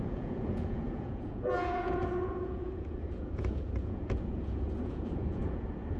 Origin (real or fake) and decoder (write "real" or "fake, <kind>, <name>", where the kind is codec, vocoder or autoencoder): fake, vocoder, Vocos